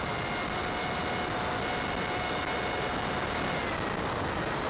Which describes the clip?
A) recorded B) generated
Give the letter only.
A